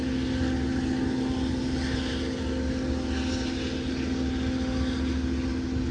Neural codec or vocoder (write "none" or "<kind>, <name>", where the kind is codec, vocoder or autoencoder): none